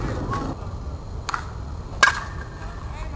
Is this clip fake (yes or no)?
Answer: no